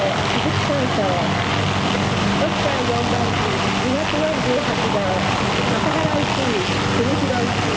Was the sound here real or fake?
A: real